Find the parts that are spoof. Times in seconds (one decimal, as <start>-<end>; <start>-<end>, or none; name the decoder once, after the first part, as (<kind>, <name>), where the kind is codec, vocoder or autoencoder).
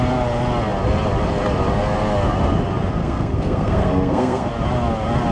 3.0-4.5 (codec, SNAC)